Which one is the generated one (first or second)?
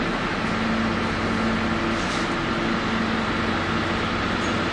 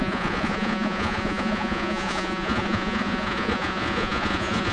second